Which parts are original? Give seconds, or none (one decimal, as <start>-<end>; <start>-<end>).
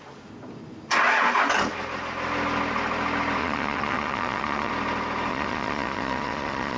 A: 0.0-3.4; 4.7-5.3